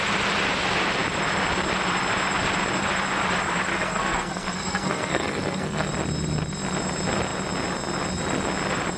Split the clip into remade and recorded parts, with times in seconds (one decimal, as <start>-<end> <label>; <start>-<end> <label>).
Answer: 0.0-3.7 recorded; 3.7-5.9 remade; 5.9-9.0 recorded